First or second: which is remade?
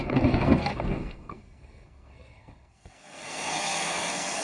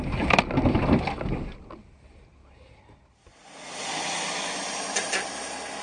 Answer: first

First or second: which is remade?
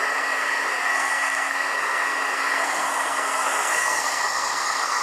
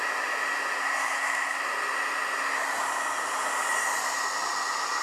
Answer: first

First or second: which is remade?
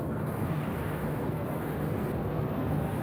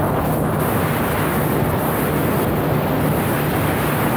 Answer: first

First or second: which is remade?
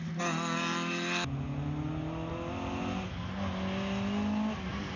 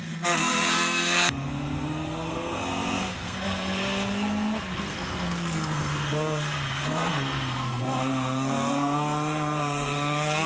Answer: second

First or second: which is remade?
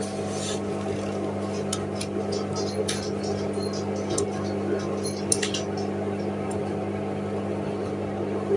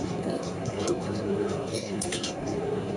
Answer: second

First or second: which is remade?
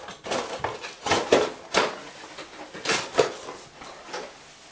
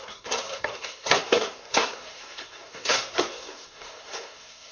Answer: second